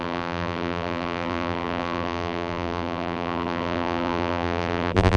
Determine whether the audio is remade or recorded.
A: remade